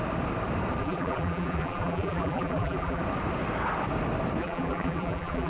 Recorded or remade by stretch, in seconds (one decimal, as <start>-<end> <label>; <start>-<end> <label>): 0.0-0.8 recorded; 0.8-3.0 remade; 3.0-4.4 recorded; 4.4-5.5 remade